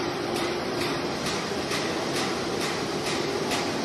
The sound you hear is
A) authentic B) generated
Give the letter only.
B